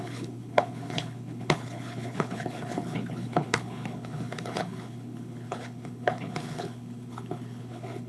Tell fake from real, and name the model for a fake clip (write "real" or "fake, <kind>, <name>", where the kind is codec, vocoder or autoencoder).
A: fake, codec, HILCodec